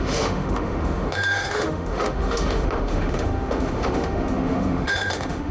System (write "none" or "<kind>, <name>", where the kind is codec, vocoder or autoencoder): autoencoder, DAC-VAE